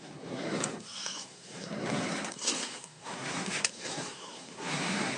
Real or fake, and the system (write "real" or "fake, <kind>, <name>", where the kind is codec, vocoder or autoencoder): fake, codec, SNAC